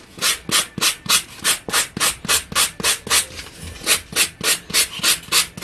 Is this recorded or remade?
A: recorded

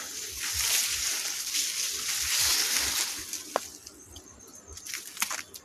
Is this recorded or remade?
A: recorded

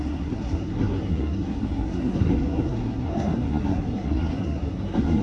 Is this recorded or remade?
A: remade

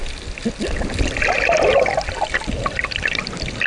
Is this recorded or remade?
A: recorded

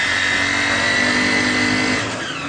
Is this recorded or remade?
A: recorded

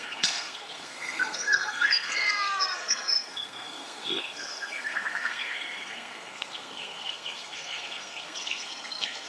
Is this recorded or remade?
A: remade